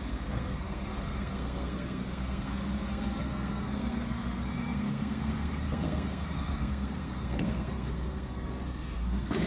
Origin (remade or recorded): remade